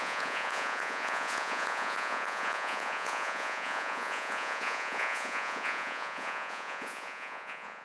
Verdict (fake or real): fake